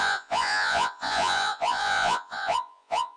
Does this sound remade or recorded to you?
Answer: remade